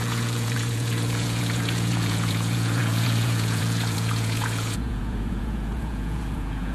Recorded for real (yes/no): no